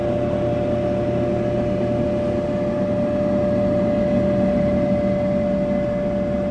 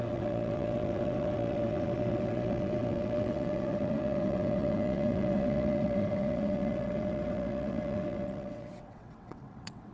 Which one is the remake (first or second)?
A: second